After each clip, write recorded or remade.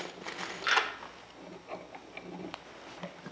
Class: recorded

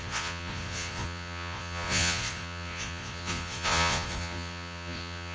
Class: remade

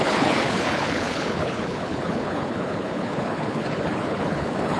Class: remade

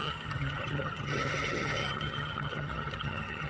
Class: remade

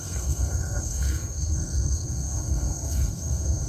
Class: remade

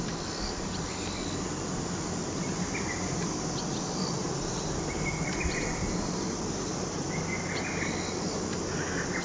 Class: recorded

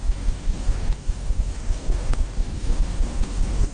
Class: remade